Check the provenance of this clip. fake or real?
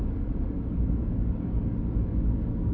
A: fake